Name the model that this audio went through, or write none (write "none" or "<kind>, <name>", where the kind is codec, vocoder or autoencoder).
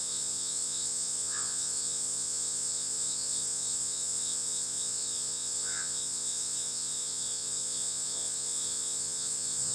vocoder, Vocos